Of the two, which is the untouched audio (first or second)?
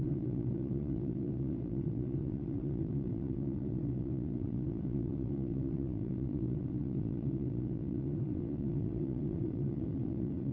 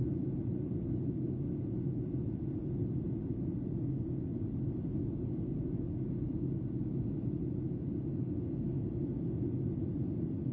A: second